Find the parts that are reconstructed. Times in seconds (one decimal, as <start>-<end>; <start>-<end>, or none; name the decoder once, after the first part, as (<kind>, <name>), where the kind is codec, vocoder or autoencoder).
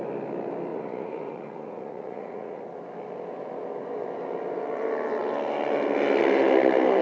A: 0.7-2.6 (vocoder, Vocos)